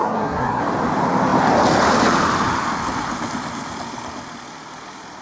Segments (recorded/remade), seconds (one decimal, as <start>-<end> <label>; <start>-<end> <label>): 0.0-0.6 remade; 0.6-5.2 recorded